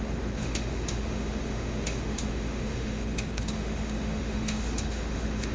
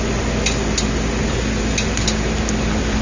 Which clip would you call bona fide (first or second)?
second